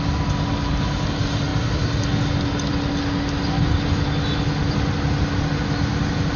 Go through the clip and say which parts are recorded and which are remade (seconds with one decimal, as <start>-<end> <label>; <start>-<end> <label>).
0.0-6.4 recorded